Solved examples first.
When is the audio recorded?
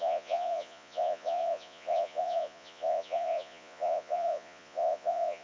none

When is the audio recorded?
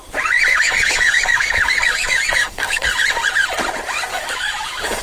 0.0-0.5; 2.9-4.1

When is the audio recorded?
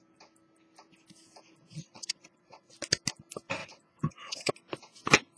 0.0-1.8; 2.7-3.6; 4.5-5.4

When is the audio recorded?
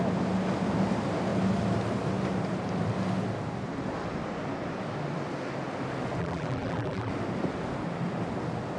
0.0-6.2; 7.1-8.8